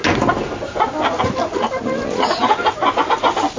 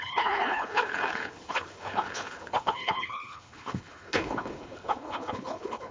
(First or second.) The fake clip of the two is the second